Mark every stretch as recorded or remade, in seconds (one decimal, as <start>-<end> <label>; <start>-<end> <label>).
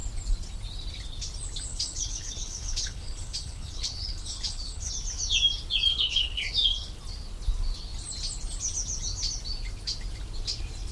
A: 0.0-1.7 recorded; 1.7-4.9 remade; 4.9-5.9 recorded; 5.9-7.0 remade; 7.0-10.9 recorded